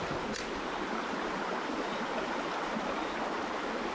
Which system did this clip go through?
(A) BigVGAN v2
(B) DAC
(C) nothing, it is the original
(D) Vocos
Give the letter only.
C